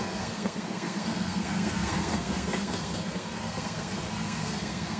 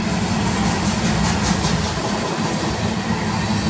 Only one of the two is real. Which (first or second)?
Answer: second